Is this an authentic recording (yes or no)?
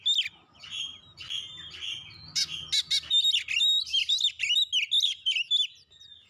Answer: yes